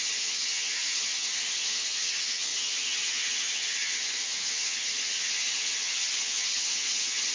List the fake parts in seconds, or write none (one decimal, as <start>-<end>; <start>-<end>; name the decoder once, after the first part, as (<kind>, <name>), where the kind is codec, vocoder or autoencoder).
0.0-7.3 (vocoder, HiFi-GAN)